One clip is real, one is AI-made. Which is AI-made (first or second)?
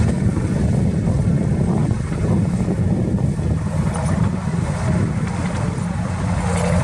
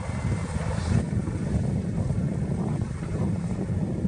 second